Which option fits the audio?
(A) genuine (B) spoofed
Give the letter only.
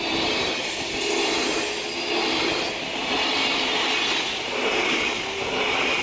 A